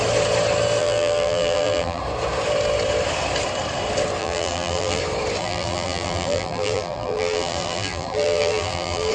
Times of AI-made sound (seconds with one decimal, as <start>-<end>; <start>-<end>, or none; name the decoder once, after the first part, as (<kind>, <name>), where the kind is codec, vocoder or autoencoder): 0.8-2.0 (vocoder, BigVGAN v2); 4.2-5.0; 5.4-9.1